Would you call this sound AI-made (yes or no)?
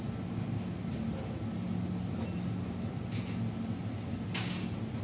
no